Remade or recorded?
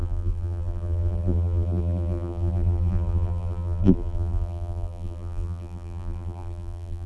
remade